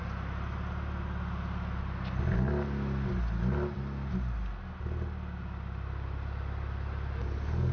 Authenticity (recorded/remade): recorded